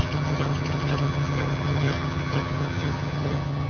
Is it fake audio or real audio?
fake